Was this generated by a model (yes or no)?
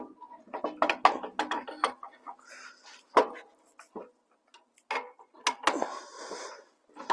no